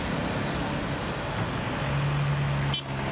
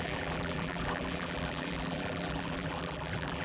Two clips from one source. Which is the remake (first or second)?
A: second